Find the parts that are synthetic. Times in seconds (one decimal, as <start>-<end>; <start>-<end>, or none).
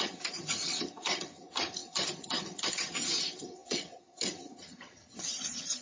0.0-5.8